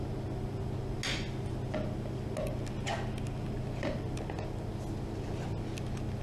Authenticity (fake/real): real